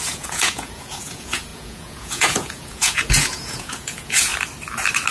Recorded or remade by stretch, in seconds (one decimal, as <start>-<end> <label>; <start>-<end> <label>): 0.0-4.3 remade; 4.3-5.1 recorded